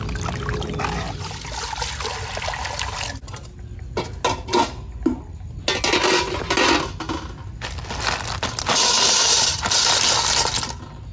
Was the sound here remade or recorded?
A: recorded